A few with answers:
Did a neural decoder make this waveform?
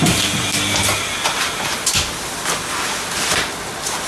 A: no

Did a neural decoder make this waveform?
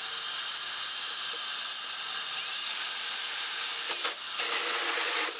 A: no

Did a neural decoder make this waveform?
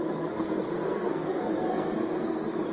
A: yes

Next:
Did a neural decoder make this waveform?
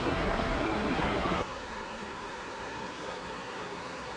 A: yes